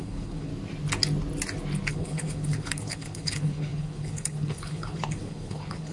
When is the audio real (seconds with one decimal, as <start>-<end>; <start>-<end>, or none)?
0.5-1.9